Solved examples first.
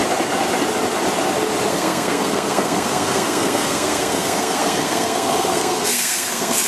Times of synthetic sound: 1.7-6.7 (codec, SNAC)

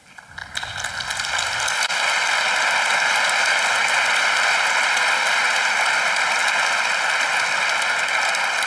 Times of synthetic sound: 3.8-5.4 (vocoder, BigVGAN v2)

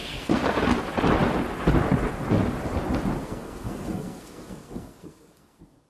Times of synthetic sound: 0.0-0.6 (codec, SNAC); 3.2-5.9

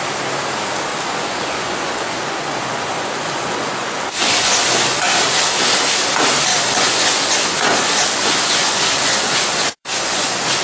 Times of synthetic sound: 0.9-5.4 (vocoder, Vocos); 6.5-10.6

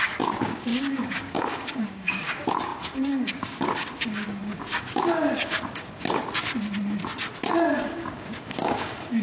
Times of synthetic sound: 0.0-6.2 (codec, DAC); 7.7-9.2